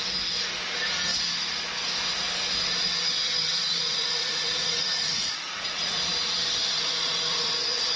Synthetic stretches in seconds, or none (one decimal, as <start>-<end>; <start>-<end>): 3.5-6.1; 6.6-7.5